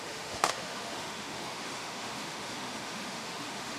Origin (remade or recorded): remade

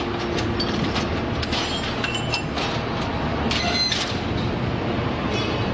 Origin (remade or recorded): recorded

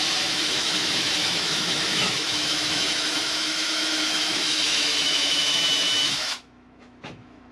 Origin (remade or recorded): remade